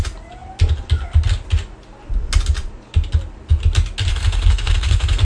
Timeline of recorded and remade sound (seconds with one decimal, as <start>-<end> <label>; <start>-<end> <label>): 0.0-4.1 recorded; 4.1-5.2 remade